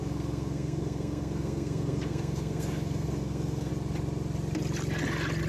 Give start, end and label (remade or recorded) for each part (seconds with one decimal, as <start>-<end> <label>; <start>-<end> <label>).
0.0-3.7 remade; 3.7-5.5 recorded